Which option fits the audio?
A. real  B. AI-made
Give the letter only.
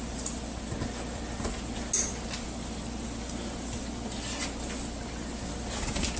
A